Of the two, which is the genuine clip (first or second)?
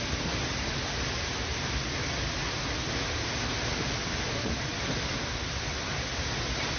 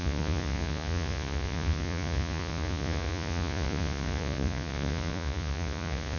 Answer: first